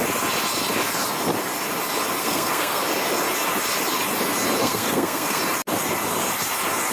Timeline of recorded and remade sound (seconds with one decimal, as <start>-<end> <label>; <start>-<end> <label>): 0.0-2.2 recorded; 2.2-2.8 remade; 2.8-4.6 recorded; 4.6-5.4 remade; 5.4-6.9 recorded